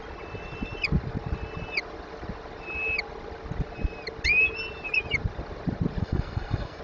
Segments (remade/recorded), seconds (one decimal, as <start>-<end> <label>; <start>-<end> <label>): 0.0-6.0 recorded; 6.0-6.8 remade